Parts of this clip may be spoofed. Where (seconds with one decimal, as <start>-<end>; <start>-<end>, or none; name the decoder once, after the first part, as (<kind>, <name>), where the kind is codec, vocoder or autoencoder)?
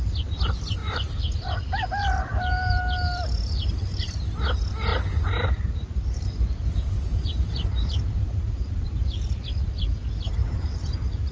0.8-2.8 (vocoder, BigVGAN v2); 4.9-9.0; 10.4-11.3